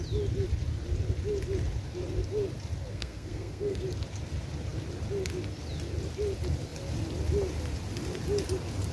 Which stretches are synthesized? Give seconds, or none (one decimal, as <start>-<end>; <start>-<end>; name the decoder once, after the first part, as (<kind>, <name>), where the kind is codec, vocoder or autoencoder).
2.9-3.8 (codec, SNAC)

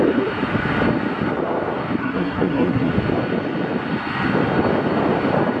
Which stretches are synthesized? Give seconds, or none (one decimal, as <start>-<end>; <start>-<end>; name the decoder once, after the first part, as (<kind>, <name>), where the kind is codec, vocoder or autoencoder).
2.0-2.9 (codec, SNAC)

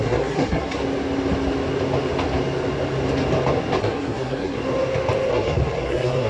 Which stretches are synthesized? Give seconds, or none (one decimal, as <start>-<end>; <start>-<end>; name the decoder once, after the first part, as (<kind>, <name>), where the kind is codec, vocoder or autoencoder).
0.0-0.8 (codec, SNAC); 3.8-4.6; 5.3-6.3

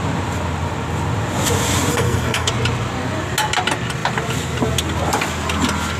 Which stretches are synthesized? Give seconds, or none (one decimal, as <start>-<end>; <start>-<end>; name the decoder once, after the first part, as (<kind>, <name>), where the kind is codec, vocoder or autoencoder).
1.9-2.5 (codec, SNAC)

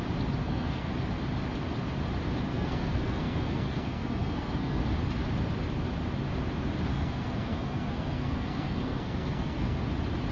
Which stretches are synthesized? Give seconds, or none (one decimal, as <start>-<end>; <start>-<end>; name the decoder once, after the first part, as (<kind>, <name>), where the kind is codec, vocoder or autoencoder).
0.4-0.9 (codec, SNAC); 2.5-4.8; 6.9-9.8